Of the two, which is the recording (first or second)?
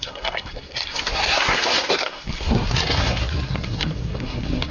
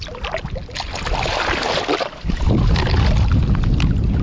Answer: second